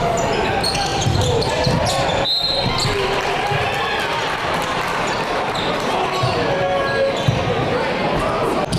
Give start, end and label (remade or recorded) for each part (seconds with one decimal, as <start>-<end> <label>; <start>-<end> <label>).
0.0-0.9 recorded; 0.9-1.5 remade; 1.5-8.8 recorded